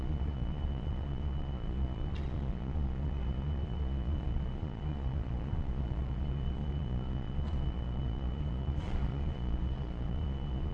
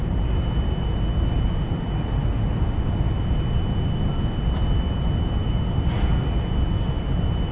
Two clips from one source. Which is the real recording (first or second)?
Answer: second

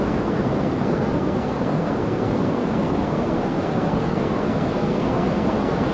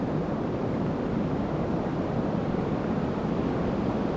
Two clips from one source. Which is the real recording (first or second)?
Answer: second